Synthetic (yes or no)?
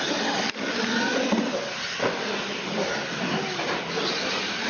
no